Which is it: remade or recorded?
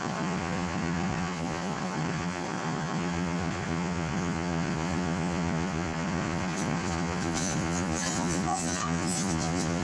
remade